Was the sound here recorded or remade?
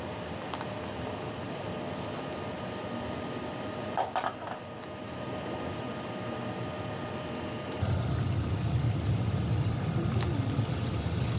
recorded